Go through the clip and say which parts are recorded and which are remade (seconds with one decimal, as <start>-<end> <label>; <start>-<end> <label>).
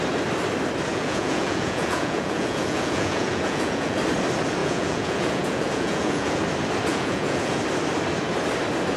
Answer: 0.0-0.9 recorded; 0.9-4.0 remade; 4.0-4.6 recorded; 4.6-6.4 remade; 6.4-6.9 recorded; 6.9-7.6 remade; 7.6-9.0 recorded